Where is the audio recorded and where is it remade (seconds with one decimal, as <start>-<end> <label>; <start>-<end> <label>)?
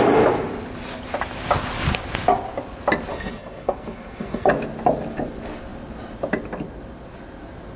0.0-3.1 recorded; 3.1-4.5 remade; 4.5-7.8 recorded